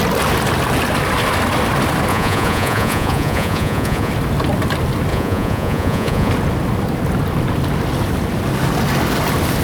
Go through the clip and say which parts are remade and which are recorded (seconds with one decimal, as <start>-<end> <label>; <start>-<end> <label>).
0.0-2.1 recorded; 2.1-4.1 remade; 4.1-5.1 recorded; 5.1-6.3 remade; 6.3-9.6 recorded